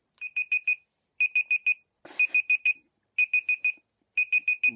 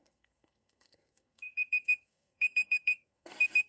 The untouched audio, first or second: first